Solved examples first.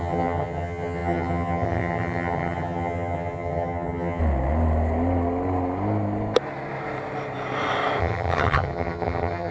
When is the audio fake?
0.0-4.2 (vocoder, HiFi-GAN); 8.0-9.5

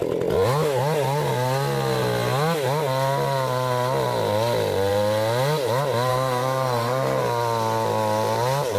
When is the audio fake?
6.1-7.2 (codec, SNAC)

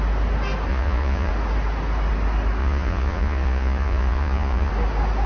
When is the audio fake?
0.7-1.3 (vocoder, Vocos); 2.6-4.7